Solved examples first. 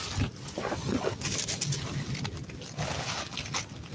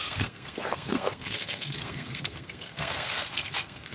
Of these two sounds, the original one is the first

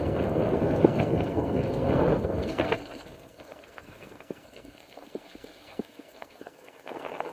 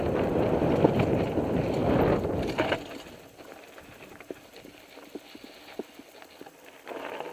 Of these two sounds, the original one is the second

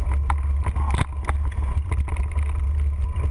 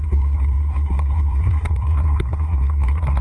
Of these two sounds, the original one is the first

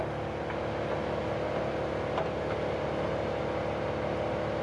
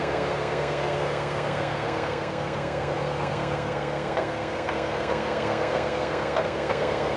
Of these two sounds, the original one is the first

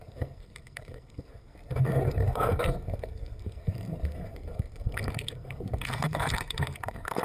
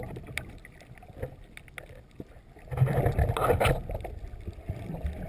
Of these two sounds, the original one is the second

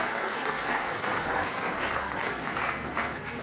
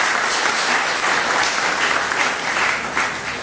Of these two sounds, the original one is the second